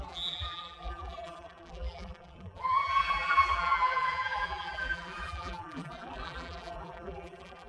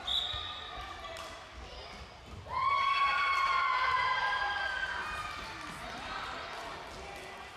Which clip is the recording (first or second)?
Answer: second